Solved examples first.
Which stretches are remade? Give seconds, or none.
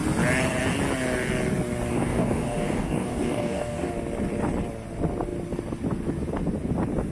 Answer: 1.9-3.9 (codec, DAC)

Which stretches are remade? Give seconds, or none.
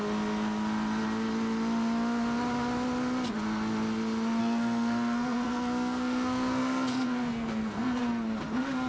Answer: 4.4-8.0 (codec, SNAC)